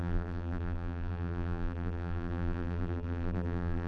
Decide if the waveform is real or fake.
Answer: fake